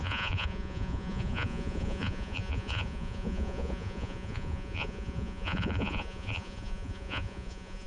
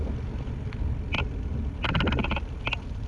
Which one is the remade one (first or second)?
first